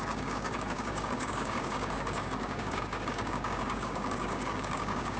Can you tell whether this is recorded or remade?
remade